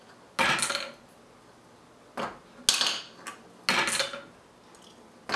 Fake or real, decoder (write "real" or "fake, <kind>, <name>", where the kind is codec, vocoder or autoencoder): real